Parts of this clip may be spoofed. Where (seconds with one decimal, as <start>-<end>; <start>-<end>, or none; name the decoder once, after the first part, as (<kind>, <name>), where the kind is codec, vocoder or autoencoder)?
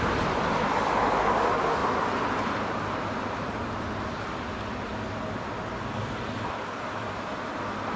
0.0-1.8 (vocoder, BigVGAN v2); 4.5-4.9; 5.9-8.0